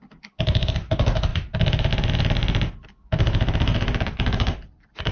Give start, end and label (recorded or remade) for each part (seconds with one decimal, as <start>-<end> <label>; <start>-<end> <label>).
0.0-1.3 recorded; 1.3-1.9 remade; 1.9-3.7 recorded; 3.7-5.1 remade